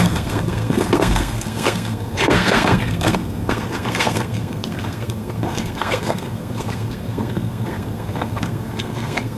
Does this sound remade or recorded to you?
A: remade